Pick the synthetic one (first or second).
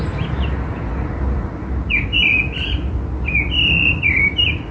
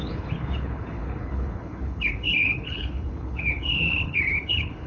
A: second